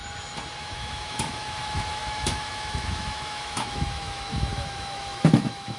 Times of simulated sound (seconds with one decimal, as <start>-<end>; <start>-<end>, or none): 0.6-5.8